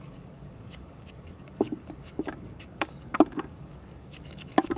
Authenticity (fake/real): fake